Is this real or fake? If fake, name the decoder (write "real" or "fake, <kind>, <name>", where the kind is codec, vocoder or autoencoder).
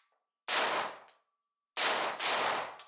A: real